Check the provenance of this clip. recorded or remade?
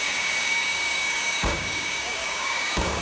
remade